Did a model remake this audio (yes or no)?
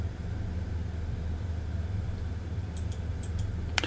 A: yes